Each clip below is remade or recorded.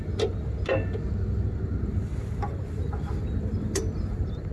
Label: recorded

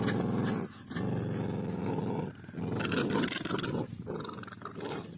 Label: recorded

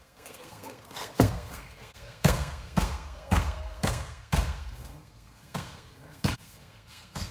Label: remade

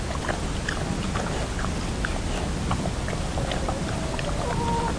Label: recorded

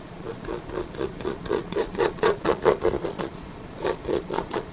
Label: remade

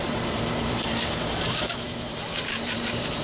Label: remade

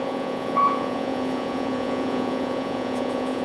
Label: remade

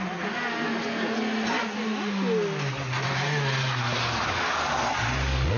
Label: recorded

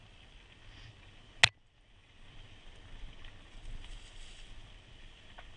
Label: recorded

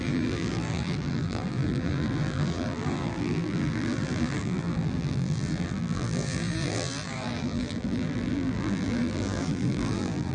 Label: remade